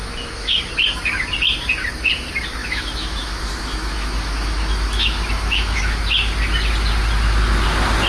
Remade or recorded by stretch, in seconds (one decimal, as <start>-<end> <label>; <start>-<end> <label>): 0.0-0.6 remade; 0.6-2.6 recorded; 2.6-6.0 remade; 6.0-8.1 recorded